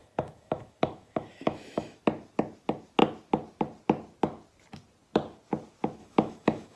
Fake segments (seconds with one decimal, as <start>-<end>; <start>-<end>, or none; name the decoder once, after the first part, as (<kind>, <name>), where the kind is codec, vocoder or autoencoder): 0.0-2.0 (autoencoder, DAC-VAE); 6.0-6.8